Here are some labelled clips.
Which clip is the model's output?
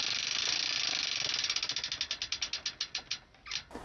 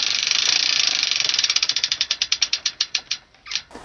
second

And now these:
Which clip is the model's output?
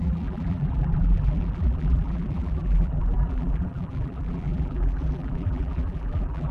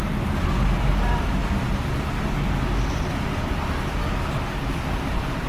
first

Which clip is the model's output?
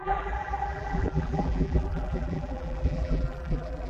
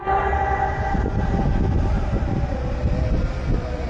first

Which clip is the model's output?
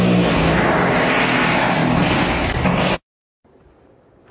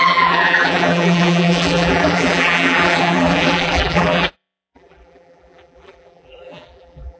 second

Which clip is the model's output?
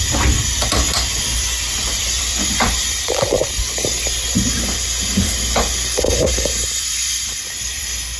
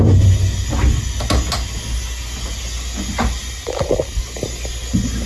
first